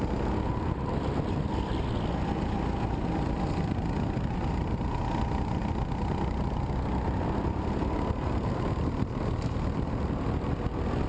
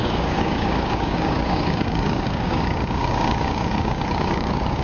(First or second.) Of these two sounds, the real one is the first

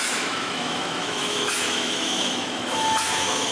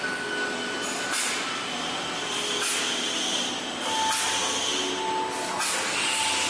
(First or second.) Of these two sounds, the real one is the second